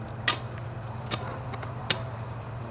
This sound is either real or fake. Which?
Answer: real